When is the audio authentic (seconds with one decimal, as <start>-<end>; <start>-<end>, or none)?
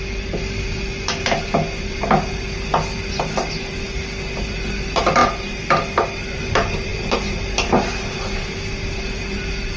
0.0-9.8